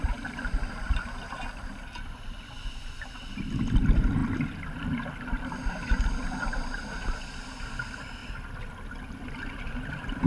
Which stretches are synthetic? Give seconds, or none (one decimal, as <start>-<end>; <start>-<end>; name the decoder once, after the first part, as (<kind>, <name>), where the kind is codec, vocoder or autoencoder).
none